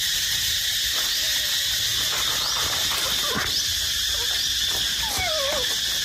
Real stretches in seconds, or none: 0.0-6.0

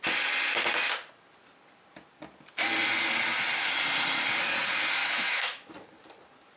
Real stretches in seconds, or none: 0.0-5.0; 5.7-6.6

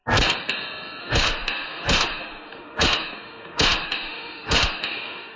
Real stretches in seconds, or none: 0.0-1.0